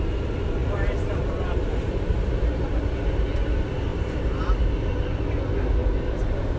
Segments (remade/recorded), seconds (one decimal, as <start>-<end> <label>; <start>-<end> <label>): 0.0-0.6 recorded; 0.6-2.3 remade; 2.3-3.9 recorded; 3.9-4.7 remade; 4.7-5.8 recorded; 5.8-6.6 remade